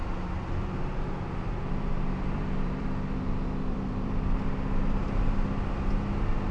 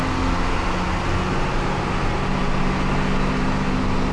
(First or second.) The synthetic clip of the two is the first